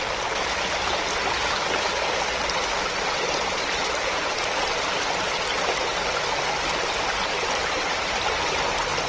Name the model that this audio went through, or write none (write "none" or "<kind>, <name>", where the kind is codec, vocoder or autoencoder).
none